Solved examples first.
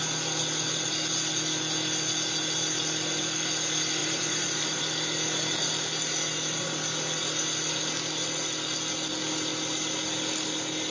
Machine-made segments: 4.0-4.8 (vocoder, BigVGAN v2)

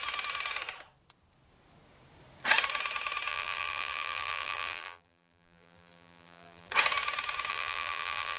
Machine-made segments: 3.3-6.7 (vocoder, BigVGAN v2); 7.5-8.4

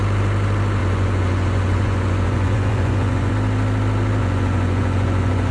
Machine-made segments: 0.8-3.3 (vocoder, Vocos); 4.2-5.5

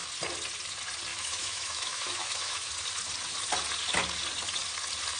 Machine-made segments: 1.1-2.7 (autoencoder, DAC-VAE)

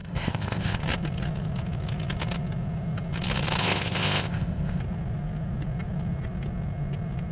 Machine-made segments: 0.0-0.8 (codec, ZipCodec); 3.6-4.8